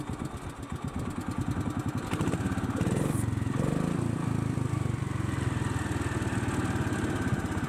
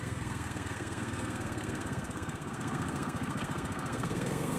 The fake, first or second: second